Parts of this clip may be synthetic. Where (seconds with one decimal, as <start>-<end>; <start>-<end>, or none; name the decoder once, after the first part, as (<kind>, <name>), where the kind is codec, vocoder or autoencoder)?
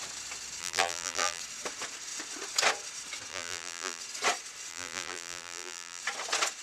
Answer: 0.6-1.4 (vocoder, BigVGAN v2); 3.3-4.0; 4.7-6.0